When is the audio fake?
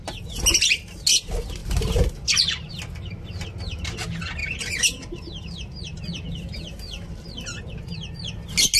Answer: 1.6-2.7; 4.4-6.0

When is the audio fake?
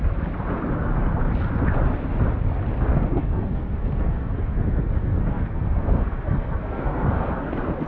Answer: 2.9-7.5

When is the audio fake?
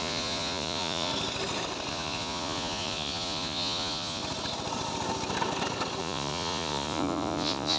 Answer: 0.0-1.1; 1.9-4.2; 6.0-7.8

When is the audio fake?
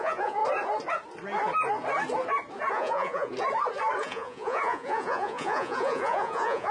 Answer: 0.0-0.4; 2.7-3.3; 4.0-6.7